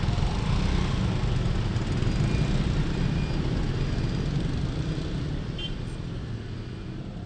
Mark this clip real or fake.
real